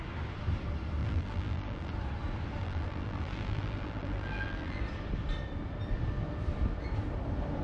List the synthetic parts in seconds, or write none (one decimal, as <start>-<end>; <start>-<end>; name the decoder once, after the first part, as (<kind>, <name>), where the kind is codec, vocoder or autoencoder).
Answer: 1.0-1.9 (vocoder, BigVGAN v2); 2.6-4.8